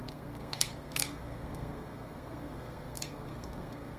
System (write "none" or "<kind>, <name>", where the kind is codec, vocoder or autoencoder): codec, SNAC